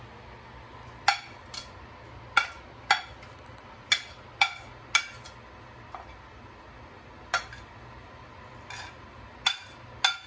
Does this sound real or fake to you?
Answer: real